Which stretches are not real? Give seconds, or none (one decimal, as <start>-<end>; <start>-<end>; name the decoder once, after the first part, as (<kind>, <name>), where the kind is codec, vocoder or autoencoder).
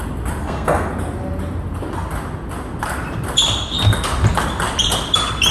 0.4-0.9 (codec, SNAC)